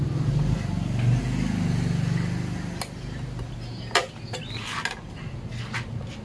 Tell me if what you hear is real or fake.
real